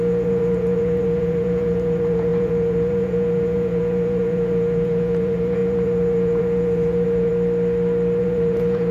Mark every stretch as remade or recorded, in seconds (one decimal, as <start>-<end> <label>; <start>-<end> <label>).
0.0-7.3 remade; 7.3-8.2 recorded; 8.2-8.9 remade